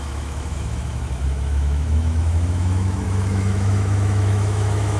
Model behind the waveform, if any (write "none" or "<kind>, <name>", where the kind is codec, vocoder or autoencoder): autoencoder, DAC-VAE